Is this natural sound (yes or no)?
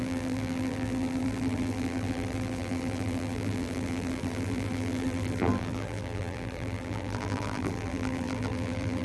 no